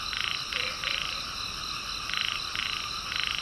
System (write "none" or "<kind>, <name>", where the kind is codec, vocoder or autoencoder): none